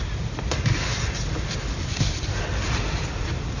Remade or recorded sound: recorded